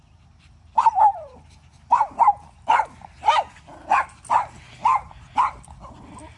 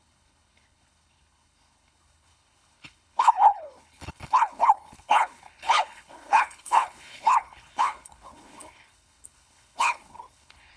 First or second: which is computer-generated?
second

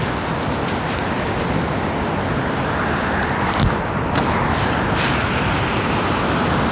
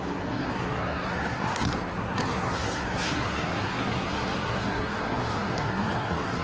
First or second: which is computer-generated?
second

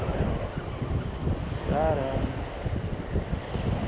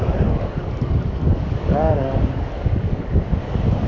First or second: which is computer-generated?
second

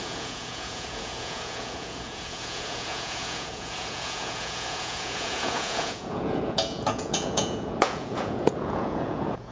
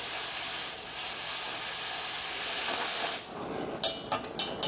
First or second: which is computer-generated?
first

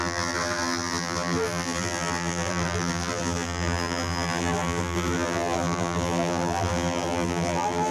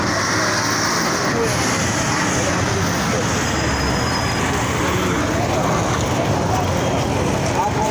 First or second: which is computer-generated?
first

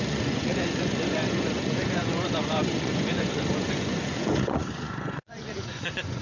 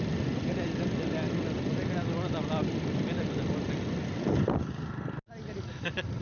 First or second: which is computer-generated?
first